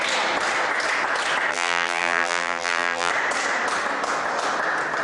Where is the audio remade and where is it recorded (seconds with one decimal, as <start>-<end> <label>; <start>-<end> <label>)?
0.0-1.5 recorded; 1.5-3.1 remade; 3.1-5.0 recorded